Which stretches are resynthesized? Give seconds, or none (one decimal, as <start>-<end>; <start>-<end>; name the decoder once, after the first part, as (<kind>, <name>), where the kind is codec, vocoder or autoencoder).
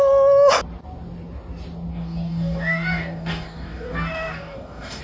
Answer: 1.9-5.0 (codec, DAC)